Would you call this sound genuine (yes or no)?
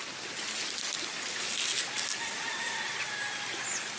yes